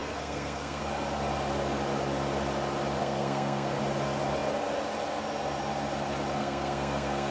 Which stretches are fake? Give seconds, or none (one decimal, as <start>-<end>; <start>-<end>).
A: 0.0-0.8; 3.0-3.8; 6.4-7.3